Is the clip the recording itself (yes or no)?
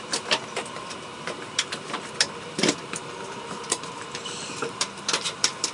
no